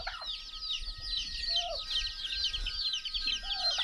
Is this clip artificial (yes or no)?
no